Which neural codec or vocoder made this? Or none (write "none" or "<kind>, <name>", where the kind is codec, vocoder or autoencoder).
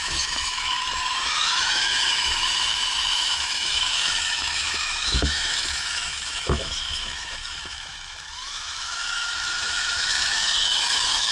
autoencoder, DAC-VAE